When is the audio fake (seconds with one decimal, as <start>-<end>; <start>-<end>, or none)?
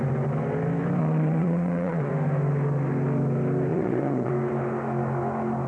1.0-2.1; 3.7-4.3